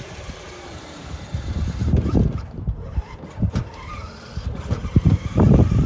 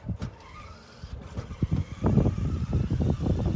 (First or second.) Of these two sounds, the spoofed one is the first